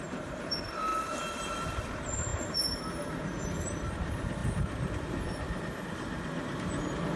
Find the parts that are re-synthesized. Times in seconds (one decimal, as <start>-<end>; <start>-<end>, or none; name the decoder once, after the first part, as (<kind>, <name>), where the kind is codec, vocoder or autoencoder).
0.0-7.2 (vocoder, BigVGAN v2)